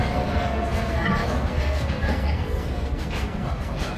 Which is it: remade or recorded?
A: remade